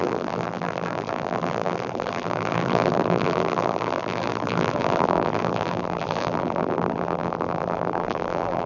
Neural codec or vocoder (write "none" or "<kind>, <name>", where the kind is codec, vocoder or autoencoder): vocoder, BigVGAN v2